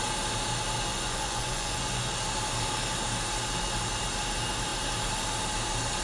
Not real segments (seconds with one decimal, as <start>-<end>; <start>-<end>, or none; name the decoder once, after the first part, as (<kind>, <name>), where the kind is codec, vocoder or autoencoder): 0.9-2.1 (vocoder, Vocos)